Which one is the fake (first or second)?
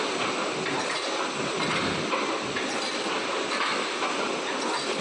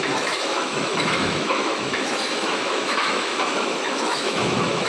second